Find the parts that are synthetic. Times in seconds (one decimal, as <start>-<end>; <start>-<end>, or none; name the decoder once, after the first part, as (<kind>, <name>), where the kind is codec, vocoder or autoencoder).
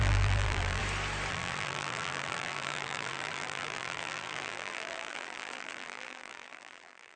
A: 0.0-0.8 (vocoder, BigVGAN v2); 1.3-7.2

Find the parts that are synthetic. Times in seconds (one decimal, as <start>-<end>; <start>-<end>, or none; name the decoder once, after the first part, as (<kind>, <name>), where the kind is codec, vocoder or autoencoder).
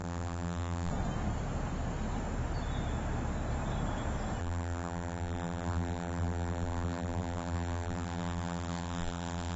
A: 0.0-0.9 (vocoder, BigVGAN v2); 4.4-9.6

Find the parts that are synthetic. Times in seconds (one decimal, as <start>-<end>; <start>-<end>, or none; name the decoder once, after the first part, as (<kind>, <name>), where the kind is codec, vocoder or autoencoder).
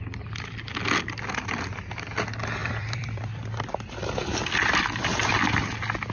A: 2.6-5.3 (vocoder, BigVGAN v2)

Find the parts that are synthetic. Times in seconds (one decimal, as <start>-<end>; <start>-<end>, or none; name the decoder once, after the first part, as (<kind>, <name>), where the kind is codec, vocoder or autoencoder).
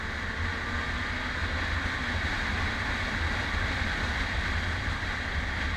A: 1.4-4.9 (vocoder, BigVGAN v2)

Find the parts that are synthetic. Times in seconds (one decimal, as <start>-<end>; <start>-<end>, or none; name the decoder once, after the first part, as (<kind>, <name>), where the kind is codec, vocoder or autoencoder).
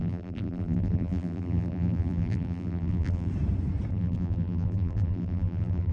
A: 0.0-3.3 (vocoder, BigVGAN v2); 3.9-5.9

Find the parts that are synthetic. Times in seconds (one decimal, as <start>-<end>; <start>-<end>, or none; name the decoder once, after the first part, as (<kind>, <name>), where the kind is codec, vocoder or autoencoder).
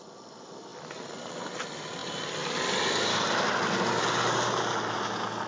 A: 2.0-4.0 (vocoder, BigVGAN v2)